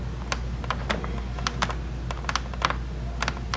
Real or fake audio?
real